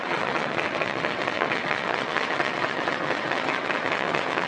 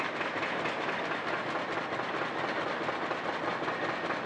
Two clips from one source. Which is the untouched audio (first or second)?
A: second